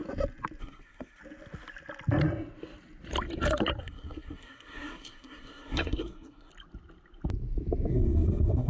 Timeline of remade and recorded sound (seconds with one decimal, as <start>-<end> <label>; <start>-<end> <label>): 0.0-0.6 recorded; 0.6-1.2 remade; 1.2-3.8 recorded; 3.8-6.5 remade; 6.5-7.9 recorded; 7.9-8.7 remade